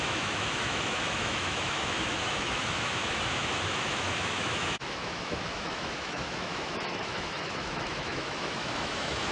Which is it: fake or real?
fake